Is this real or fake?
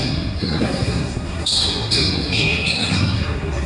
fake